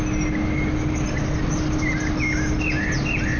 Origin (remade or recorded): recorded